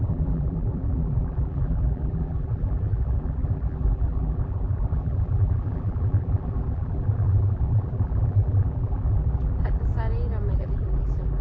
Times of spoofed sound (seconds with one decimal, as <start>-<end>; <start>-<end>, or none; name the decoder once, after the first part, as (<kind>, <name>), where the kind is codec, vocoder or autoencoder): 0.0-9.9 (vocoder, BigVGAN v2); 10.5-11.4